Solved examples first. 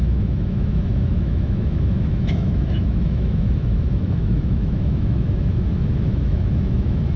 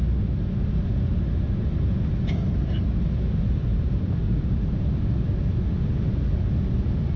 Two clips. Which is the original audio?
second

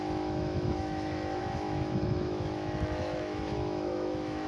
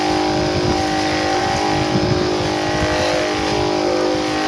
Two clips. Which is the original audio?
second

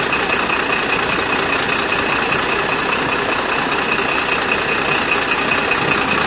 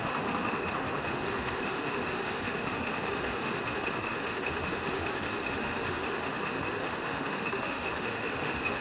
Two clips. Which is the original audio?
first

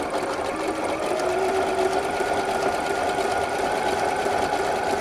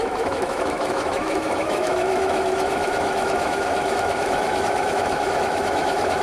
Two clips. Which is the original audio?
first